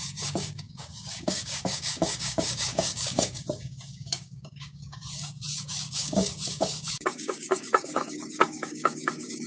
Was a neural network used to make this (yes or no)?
yes